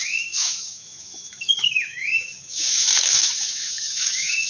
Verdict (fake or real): fake